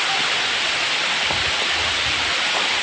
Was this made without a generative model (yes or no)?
yes